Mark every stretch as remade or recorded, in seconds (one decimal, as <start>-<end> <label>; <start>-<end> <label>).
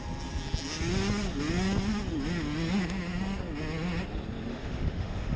0.0-4.5 recorded; 4.5-5.4 remade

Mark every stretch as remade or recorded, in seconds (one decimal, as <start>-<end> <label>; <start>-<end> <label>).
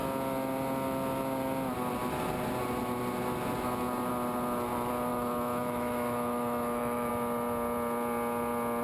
0.0-5.1 recorded; 5.1-7.1 remade; 7.1-8.8 recorded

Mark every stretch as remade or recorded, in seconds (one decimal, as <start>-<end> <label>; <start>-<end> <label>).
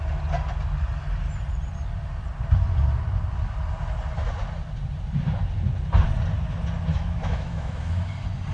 0.0-6.9 recorded; 6.9-8.1 remade; 8.1-8.5 recorded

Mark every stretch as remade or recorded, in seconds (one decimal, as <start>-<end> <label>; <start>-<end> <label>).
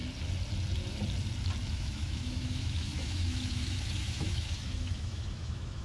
0.0-1.7 recorded; 1.7-5.8 remade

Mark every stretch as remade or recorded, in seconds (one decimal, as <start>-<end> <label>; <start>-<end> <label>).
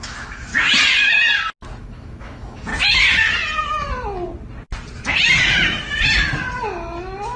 0.0-0.5 remade; 0.5-1.8 recorded; 1.8-2.7 remade; 2.7-7.4 recorded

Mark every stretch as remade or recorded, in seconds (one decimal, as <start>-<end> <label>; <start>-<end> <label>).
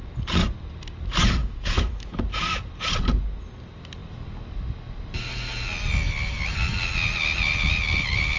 0.0-1.4 recorded; 1.4-2.2 remade; 2.2-8.4 recorded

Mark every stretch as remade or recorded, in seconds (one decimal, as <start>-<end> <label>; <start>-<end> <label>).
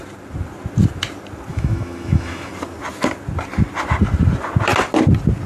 0.0-1.5 recorded; 1.5-2.5 remade; 2.5-5.5 recorded